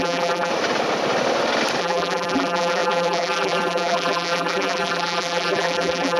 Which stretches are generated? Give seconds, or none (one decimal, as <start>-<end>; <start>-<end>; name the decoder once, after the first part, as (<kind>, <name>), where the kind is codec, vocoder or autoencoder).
0.0-0.5 (vocoder, BigVGAN v2); 1.8-6.2